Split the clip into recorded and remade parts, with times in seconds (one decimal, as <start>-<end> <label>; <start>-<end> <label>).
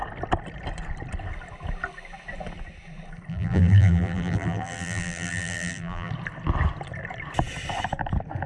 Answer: 0.0-3.3 recorded; 3.3-6.1 remade; 6.1-8.5 recorded